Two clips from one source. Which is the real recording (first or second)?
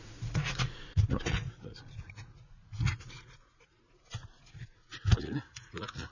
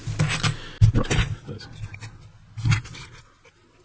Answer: second